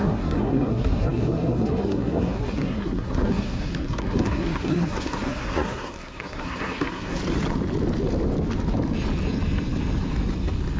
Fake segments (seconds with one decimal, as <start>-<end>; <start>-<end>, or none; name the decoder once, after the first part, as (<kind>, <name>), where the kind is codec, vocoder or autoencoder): 0.0-7.2 (codec, SNAC)